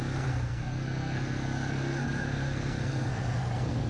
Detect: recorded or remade remade